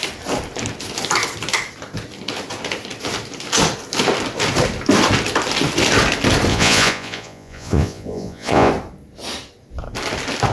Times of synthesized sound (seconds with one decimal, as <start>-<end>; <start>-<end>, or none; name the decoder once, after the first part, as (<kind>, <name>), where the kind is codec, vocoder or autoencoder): 6.5-8.7 (vocoder, Vocos)